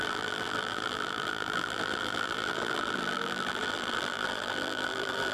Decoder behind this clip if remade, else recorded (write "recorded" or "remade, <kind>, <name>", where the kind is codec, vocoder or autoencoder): remade, vocoder, BigVGAN v2